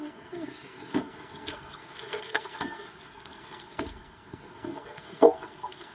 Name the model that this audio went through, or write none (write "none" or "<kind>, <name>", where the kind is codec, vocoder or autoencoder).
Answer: codec, SNAC